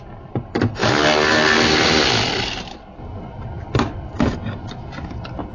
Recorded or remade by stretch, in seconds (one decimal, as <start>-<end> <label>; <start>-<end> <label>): 0.0-5.5 recorded